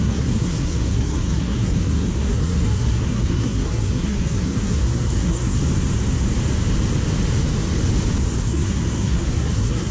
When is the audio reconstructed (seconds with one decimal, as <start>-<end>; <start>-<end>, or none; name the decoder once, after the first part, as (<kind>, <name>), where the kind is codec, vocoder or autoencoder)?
0.0-5.6 (codec, SNAC); 8.4-9.9